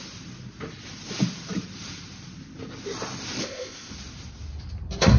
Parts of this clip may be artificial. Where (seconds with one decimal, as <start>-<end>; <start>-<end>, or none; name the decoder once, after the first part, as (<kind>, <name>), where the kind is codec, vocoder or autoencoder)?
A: 3.4-3.9 (codec, ZipCodec)